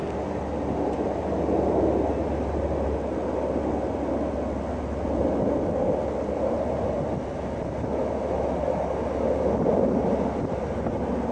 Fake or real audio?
real